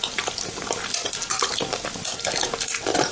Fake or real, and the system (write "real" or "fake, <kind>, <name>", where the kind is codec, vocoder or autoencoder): real